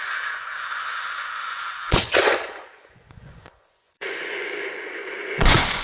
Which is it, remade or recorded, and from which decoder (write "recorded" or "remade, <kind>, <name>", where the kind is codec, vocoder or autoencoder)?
remade, vocoder, Vocos